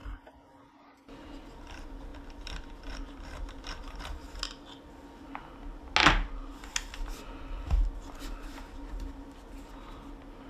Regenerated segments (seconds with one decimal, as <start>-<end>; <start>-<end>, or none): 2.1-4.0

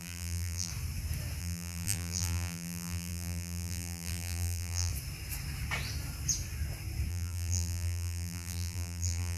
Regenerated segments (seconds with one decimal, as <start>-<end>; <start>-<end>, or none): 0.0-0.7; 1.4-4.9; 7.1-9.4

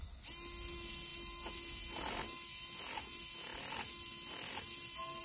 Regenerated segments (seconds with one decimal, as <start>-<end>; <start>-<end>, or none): none

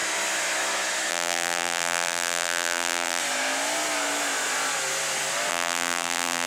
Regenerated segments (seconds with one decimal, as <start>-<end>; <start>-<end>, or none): 1.1-3.2; 5.5-6.5

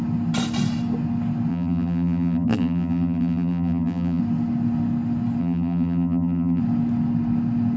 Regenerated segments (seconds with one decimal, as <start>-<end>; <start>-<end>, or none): 1.5-4.2; 5.4-6.6